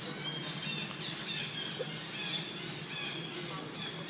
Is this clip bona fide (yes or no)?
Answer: yes